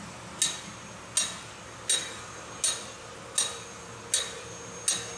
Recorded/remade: recorded